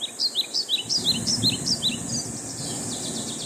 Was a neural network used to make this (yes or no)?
no